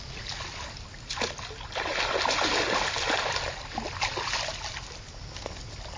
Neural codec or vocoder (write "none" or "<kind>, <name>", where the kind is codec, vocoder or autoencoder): none